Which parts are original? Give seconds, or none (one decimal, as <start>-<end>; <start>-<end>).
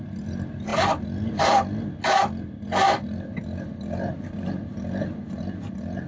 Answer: 0.0-6.1